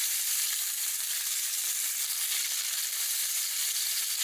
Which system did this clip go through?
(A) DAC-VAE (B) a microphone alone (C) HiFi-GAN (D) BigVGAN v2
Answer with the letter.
B